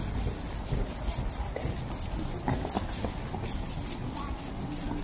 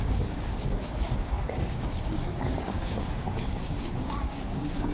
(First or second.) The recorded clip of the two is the first